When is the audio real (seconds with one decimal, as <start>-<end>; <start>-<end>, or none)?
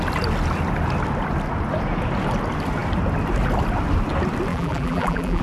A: 0.0-4.5